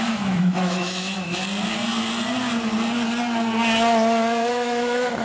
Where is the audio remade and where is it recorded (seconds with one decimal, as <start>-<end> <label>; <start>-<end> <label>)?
0.0-1.4 remade; 1.4-4.5 recorded; 4.5-5.2 remade